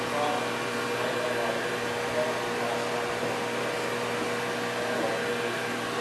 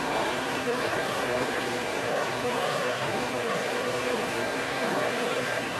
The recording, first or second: first